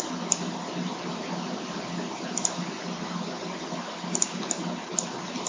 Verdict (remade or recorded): recorded